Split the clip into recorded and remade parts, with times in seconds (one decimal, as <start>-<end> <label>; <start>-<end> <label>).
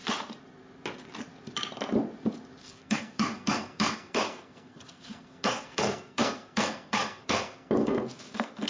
0.0-2.6 recorded; 2.6-8.7 remade